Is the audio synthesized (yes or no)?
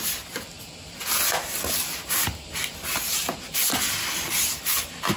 no